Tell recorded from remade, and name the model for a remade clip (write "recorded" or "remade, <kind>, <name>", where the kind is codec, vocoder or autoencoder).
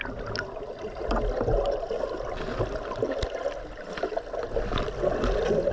recorded